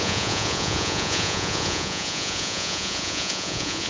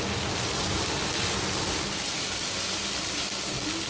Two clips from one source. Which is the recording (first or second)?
second